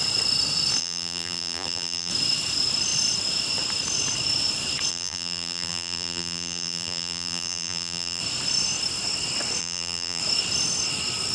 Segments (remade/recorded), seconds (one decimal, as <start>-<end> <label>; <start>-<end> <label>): 0.0-0.8 recorded; 0.8-2.1 remade; 2.1-4.9 recorded; 4.9-8.2 remade; 8.2-9.6 recorded; 9.6-10.2 remade; 10.2-11.3 recorded